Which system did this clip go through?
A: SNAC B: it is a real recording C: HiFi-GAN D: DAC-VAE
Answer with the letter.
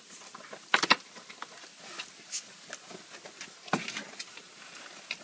B